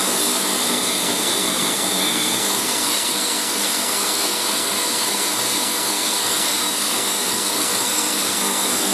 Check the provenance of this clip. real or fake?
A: fake